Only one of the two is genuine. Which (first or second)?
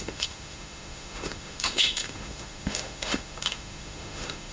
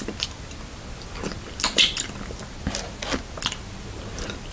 second